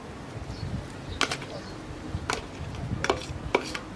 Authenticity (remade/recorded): recorded